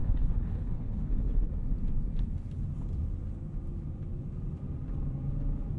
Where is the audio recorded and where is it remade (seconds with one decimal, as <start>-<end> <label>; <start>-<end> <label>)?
0.0-1.5 remade; 1.5-5.8 recorded